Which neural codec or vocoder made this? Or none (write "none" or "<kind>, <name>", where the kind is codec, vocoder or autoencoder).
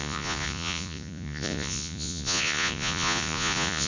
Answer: vocoder, Vocos